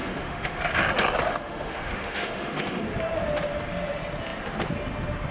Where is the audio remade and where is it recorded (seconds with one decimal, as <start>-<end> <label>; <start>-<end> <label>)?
0.0-0.6 remade; 0.6-1.3 recorded; 1.3-2.8 remade; 2.8-5.3 recorded